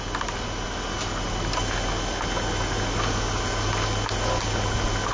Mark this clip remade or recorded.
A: recorded